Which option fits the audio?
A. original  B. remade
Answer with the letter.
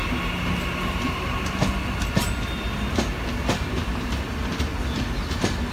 A